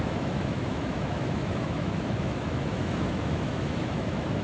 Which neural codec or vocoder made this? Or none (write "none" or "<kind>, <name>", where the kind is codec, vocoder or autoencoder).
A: autoencoder, DAC-VAE